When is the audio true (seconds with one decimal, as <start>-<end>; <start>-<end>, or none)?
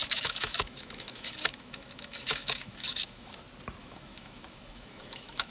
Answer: 3.3-3.8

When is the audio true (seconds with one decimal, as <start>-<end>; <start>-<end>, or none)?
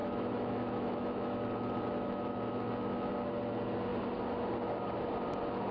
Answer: 3.1-5.7